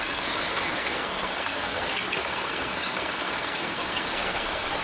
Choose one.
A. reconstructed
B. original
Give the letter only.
A